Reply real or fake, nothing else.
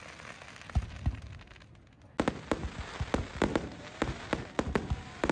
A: real